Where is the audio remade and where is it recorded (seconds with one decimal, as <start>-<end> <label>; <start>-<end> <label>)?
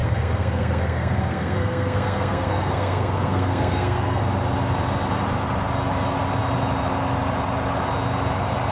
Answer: 0.0-4.2 remade; 4.2-8.7 recorded